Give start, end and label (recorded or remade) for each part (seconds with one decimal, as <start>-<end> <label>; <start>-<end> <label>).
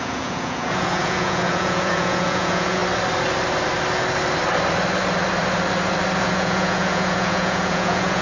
0.0-2.8 remade; 2.8-6.2 recorded; 6.2-8.2 remade